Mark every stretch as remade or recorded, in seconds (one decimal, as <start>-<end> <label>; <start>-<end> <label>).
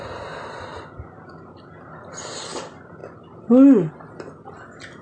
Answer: 0.0-5.0 recorded